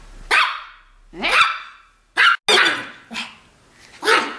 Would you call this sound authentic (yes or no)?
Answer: yes